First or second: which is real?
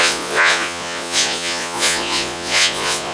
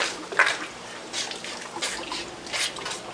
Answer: second